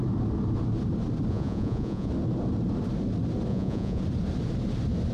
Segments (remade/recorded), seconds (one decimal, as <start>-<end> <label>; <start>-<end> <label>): 0.0-1.3 recorded; 1.3-2.1 remade; 2.1-3.5 recorded; 3.5-4.0 remade; 4.0-5.1 recorded